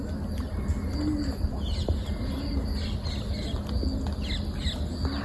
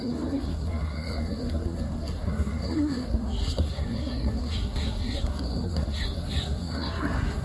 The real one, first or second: first